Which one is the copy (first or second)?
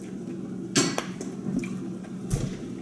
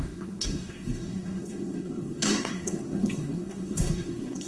second